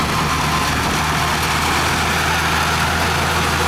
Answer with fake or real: real